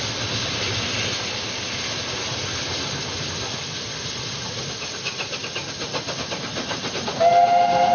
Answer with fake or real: real